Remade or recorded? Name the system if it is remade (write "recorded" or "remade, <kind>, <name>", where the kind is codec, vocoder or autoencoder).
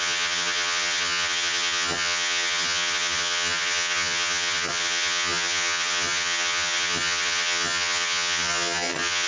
remade, vocoder, HiFi-GAN